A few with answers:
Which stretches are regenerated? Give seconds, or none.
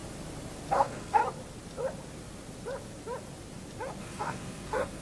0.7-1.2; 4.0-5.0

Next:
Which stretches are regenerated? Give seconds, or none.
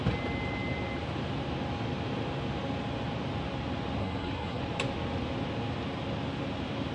4.0-4.6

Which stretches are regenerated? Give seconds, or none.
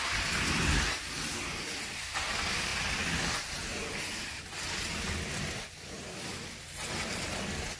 none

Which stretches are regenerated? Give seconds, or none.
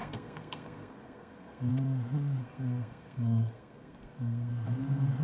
0.0-1.7; 2.4-4.5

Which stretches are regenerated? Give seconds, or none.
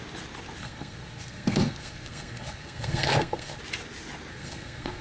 0.6-3.6; 4.3-5.0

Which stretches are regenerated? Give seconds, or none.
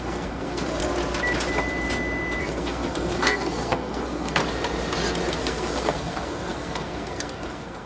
0.0-0.8; 2.4-4.4; 5.3-7.9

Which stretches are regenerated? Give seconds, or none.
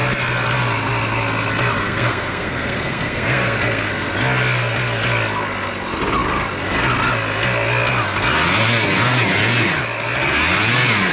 1.8-3.9